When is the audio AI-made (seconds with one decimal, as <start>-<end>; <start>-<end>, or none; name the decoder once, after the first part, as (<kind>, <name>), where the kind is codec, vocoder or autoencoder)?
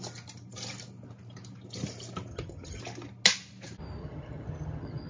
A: 2.3-2.8 (vocoder, HiFi-GAN); 4.0-5.1